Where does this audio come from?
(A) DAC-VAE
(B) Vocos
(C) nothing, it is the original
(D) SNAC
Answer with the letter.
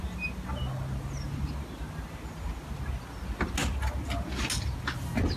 C